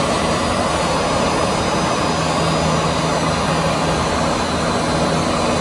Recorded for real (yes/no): yes